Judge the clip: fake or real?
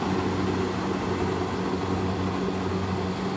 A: real